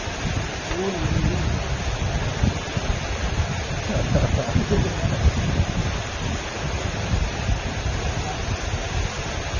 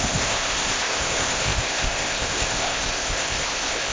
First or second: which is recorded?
first